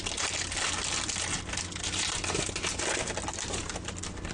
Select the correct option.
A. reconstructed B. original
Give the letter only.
B